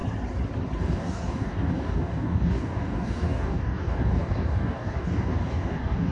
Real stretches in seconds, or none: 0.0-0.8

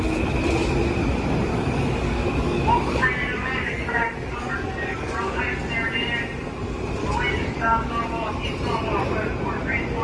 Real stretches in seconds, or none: 0.0-1.5; 5.4-7.0; 8.3-10.0

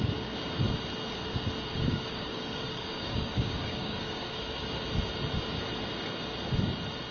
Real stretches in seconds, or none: 0.0-1.7; 4.4-7.1

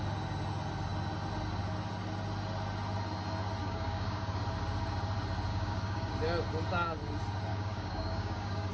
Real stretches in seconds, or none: 0.0-3.6; 4.4-5.5; 6.1-7.5

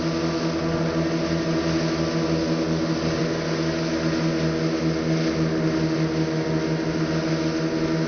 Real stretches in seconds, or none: 0.0-8.1

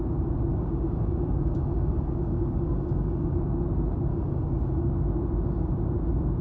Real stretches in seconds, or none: 0.0-0.5; 3.4-4.1; 4.9-6.4